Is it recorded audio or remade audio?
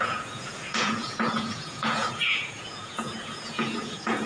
remade